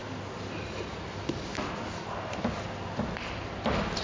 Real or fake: real